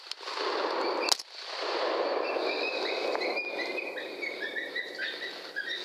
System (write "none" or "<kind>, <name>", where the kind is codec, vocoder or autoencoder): none